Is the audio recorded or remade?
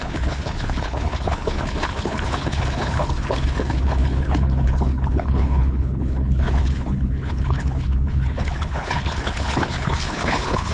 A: remade